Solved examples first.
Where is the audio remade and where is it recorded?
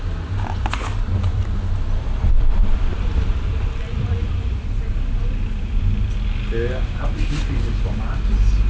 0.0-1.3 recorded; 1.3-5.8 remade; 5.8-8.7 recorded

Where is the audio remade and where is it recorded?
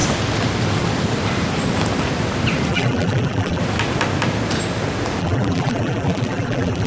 0.0-2.7 recorded; 2.7-3.6 remade; 3.6-5.2 recorded; 5.2-6.9 remade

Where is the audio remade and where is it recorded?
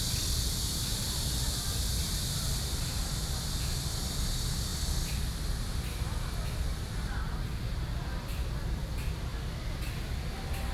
0.0-10.7 recorded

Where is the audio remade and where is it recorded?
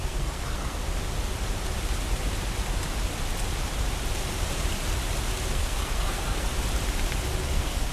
0.0-0.8 remade; 0.8-5.5 recorded; 5.5-6.5 remade; 6.5-7.4 recorded; 7.4-7.9 remade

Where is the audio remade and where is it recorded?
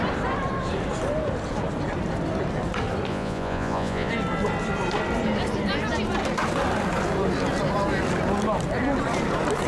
0.0-3.1 recorded; 3.1-4.1 remade; 4.1-9.7 recorded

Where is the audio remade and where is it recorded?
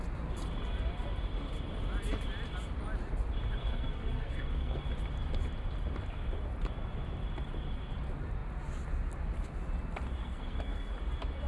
0.0-3.6 recorded; 3.6-4.8 remade; 4.8-10.2 recorded; 10.2-10.9 remade; 10.9-11.5 recorded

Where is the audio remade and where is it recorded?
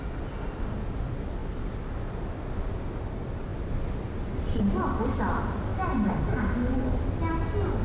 0.0-7.8 recorded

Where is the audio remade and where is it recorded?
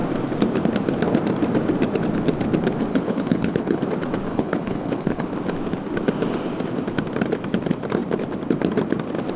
0.0-2.9 recorded; 2.9-3.8 remade; 3.8-4.3 recorded; 4.3-5.3 remade; 5.3-9.4 recorded